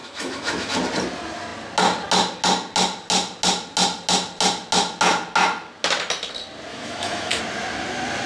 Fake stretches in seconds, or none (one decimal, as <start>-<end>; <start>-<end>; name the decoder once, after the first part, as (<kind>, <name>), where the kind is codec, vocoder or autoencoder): 0.0-0.8 (autoencoder, DAC-VAE); 6.7-7.4